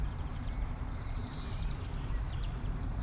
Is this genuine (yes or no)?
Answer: no